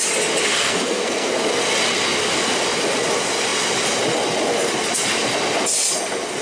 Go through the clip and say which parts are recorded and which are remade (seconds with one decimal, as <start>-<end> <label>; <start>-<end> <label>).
0.0-0.5 recorded; 0.5-1.3 remade; 1.3-6.4 recorded